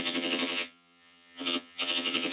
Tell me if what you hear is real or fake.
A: fake